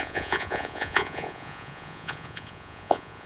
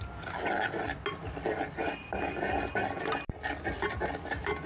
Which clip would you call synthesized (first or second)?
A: first